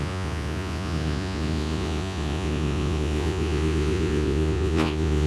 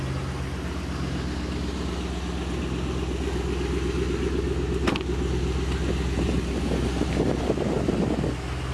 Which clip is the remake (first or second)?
first